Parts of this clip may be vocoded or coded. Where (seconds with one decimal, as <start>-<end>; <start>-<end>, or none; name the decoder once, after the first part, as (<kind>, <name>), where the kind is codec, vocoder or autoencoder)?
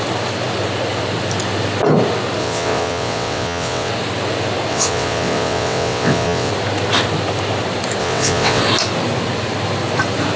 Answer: 2.4-3.9 (vocoder, WaveNeXt); 4.7-6.5; 8.0-8.6